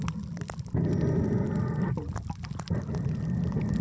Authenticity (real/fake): real